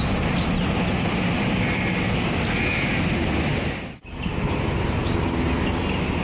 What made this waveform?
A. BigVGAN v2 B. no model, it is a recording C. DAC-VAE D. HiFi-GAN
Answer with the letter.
B